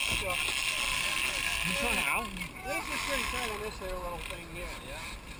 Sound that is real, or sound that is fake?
real